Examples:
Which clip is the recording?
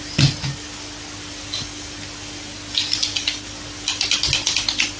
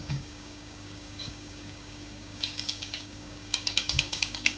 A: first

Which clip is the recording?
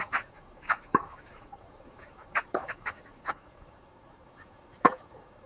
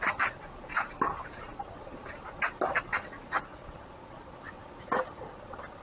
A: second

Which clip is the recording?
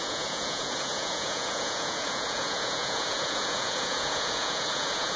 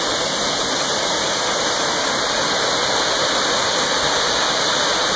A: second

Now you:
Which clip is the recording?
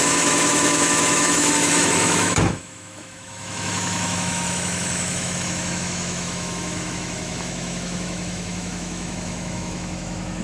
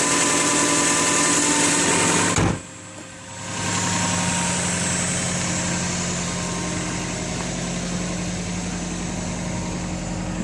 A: second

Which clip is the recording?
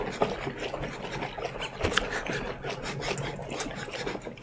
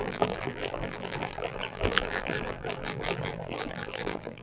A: first